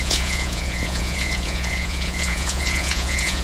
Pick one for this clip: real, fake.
fake